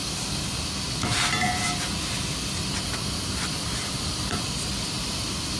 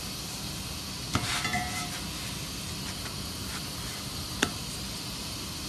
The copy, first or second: first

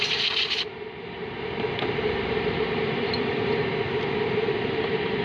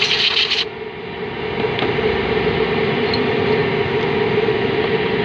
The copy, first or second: first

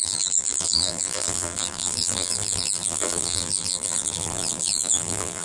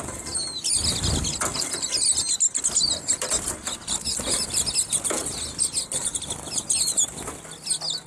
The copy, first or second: first